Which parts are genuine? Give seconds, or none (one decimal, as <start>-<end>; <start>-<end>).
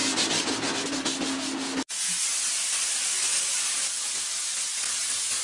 0.0-5.4